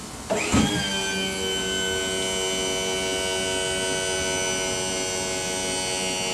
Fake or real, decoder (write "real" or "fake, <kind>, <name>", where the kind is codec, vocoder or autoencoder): real